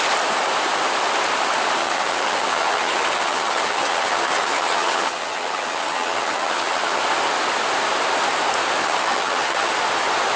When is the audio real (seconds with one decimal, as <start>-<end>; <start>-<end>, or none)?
0.0-1.8; 7.0-8.8; 9.7-10.4